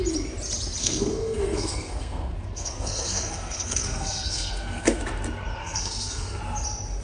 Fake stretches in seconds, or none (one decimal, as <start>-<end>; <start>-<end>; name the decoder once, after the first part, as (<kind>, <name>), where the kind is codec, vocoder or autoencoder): 0.8-5.0 (codec, SNAC); 5.6-6.4